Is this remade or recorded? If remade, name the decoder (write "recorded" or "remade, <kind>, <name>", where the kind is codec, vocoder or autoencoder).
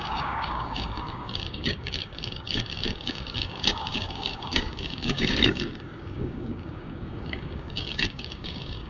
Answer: remade, codec, DAC